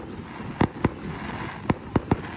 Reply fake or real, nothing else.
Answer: real